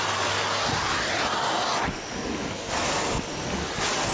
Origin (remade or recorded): recorded